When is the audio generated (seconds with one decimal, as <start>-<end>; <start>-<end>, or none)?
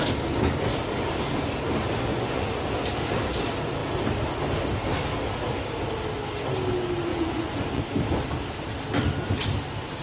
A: 2.1-2.7; 7.1-7.8